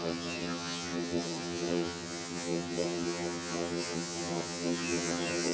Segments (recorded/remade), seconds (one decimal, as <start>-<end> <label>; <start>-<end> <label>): 0.0-5.5 remade